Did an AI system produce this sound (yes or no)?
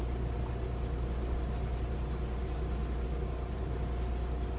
no